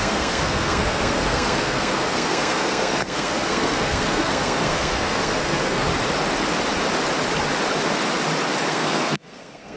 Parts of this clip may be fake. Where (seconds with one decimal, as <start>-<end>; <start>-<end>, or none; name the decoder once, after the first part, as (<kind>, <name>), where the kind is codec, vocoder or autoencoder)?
0.0-5.9 (codec, SNAC); 8.7-9.8